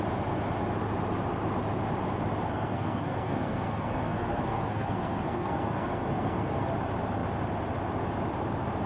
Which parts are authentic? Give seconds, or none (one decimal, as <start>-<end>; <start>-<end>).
0.0-2.5; 6.7-8.9